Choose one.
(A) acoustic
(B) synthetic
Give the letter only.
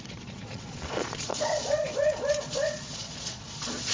B